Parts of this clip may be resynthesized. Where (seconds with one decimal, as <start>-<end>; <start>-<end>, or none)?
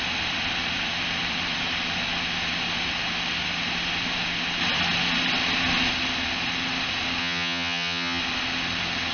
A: 7.2-8.2